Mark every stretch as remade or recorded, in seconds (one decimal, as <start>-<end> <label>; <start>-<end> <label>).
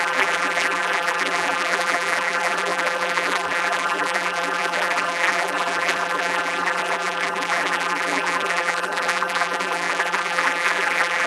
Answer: 0.0-11.3 remade